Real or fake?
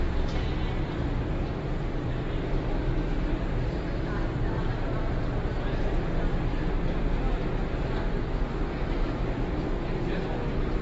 real